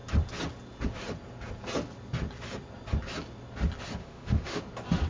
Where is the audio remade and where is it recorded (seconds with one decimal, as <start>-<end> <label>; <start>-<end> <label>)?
0.0-4.0 recorded; 4.0-4.6 remade; 4.6-5.1 recorded

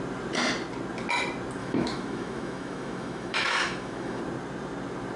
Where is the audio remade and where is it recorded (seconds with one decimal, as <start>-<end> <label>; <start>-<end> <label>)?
0.0-1.6 recorded; 1.6-4.2 remade; 4.2-5.2 recorded

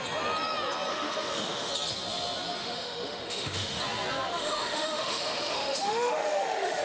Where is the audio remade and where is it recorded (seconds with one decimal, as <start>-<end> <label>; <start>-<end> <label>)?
0.0-0.9 recorded; 0.9-1.7 remade; 1.7-2.6 recorded; 2.6-3.8 remade; 3.8-4.3 recorded; 4.3-6.8 remade